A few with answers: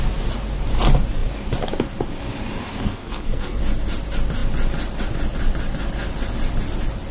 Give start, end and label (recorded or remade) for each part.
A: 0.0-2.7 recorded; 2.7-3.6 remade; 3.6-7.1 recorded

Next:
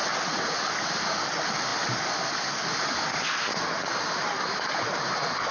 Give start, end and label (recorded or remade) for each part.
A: 0.0-5.5 recorded

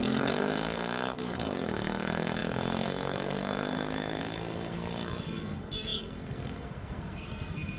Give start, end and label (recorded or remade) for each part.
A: 0.0-7.8 remade